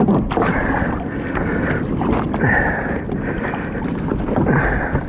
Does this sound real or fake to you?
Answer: real